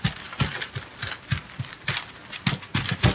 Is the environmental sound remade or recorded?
recorded